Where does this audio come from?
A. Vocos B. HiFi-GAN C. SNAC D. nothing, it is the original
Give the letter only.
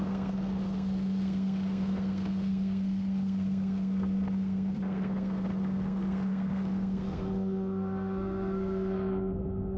C